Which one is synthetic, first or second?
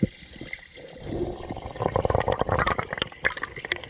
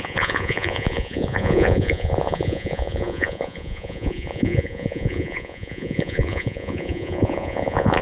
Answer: second